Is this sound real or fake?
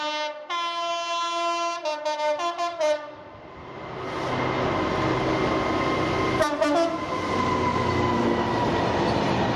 real